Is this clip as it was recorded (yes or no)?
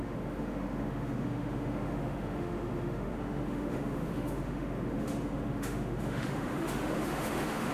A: no